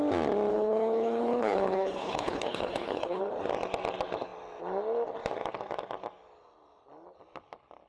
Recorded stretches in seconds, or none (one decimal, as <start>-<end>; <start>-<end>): 0.0-0.5; 3.2-7.9